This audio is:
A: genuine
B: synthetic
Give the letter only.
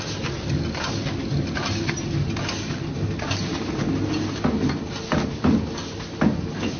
A